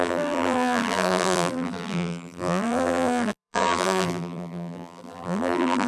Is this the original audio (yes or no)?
no